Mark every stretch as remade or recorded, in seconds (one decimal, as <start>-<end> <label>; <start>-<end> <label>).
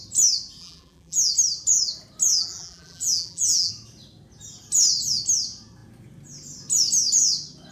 0.0-0.6 recorded; 0.6-1.3 remade; 1.3-2.3 recorded; 2.3-3.7 remade; 3.7-7.7 recorded